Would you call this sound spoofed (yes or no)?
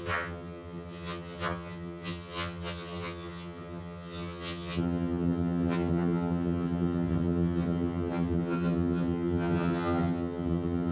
yes